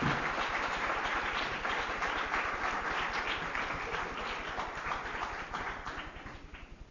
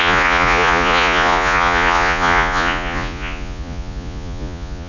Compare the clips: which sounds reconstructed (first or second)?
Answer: second